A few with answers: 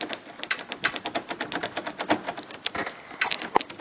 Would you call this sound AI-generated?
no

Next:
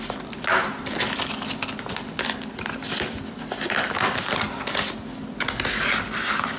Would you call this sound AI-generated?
no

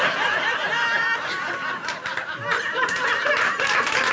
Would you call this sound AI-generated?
no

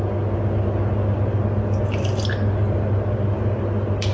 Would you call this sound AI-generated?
no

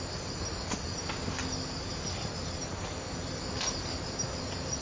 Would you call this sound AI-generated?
no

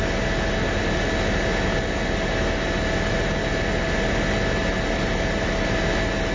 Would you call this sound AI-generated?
no